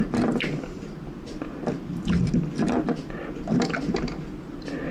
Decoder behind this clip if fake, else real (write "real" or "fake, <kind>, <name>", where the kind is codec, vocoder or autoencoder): real